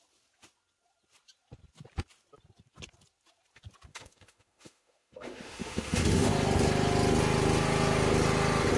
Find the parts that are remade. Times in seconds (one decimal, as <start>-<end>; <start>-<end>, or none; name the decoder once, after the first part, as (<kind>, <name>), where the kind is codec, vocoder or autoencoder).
3.9-6.3 (autoencoder, DAC-VAE)